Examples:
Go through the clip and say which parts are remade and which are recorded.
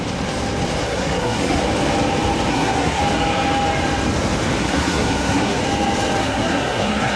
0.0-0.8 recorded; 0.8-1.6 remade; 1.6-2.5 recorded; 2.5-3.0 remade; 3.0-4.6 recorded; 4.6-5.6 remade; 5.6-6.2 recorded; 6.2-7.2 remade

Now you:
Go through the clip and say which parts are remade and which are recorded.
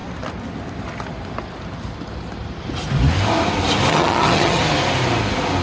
0.0-3.9 recorded; 3.9-4.6 remade; 4.6-5.6 recorded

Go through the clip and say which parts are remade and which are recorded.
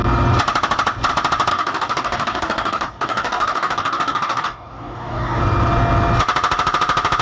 0.0-1.5 recorded; 1.5-5.4 remade; 5.4-7.2 recorded